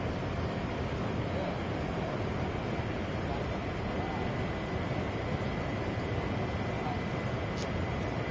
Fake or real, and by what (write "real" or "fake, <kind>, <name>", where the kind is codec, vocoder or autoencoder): real